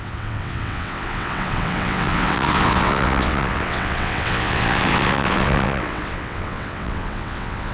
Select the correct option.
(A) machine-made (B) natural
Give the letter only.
A